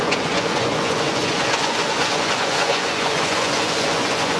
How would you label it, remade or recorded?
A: remade